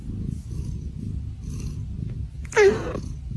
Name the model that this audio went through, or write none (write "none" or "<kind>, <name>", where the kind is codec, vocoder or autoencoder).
none